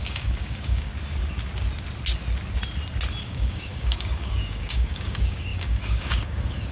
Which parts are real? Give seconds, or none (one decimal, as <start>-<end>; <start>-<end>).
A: 0.9-3.2